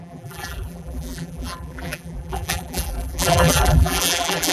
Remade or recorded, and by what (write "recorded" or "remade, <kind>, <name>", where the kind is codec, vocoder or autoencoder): remade, vocoder, BigVGAN v2